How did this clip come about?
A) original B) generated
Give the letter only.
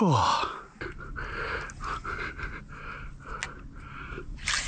A